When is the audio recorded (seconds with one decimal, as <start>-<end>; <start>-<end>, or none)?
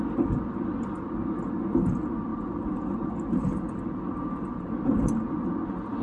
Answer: 0.0-6.0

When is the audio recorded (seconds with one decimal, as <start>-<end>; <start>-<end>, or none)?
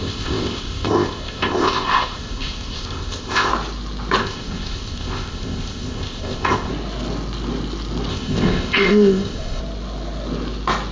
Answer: 3.5-4.2; 6.7-8.1; 9.6-10.9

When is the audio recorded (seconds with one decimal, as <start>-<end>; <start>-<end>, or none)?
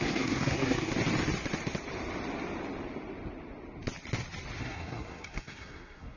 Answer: 0.9-4.6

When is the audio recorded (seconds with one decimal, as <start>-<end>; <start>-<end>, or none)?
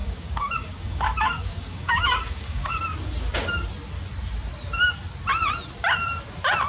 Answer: 2.8-6.7